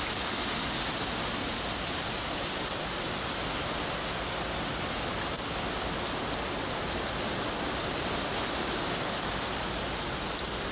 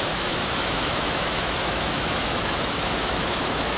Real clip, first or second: first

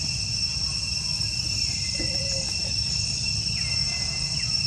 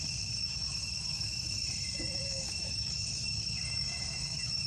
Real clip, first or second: first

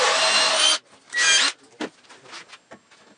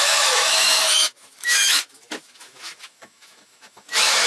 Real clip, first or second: first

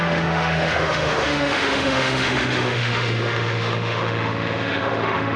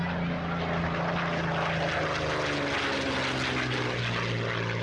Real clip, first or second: second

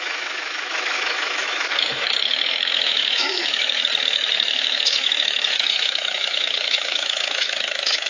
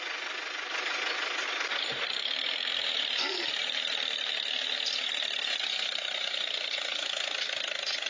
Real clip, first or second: second